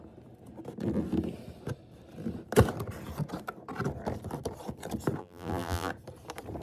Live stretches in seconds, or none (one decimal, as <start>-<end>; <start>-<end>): 0.0-5.2; 5.9-6.6